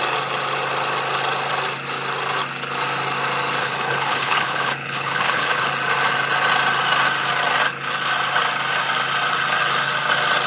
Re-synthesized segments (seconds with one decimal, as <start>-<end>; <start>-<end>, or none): 3.6-5.7

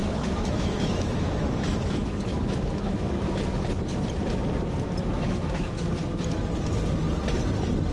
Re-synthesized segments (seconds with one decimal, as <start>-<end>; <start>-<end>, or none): 0.0-3.4; 5.0-5.6